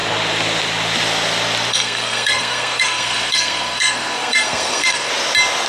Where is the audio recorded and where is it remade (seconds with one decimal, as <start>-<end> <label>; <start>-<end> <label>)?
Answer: 0.0-1.7 recorded; 1.7-5.1 remade; 5.1-5.7 recorded